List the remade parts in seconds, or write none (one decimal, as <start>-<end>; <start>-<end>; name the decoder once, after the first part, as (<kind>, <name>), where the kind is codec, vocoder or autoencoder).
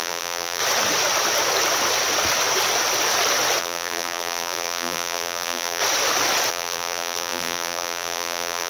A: 0.0-0.6 (vocoder, BigVGAN v2); 3.6-5.8; 6.5-8.7